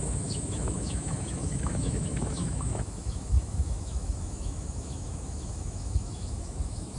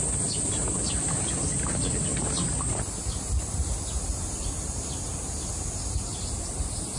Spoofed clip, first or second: first